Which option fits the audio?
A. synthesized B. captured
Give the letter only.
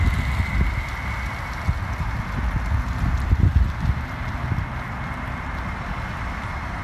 B